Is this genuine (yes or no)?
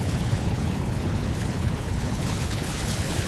no